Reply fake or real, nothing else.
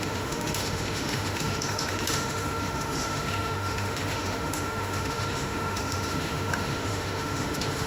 fake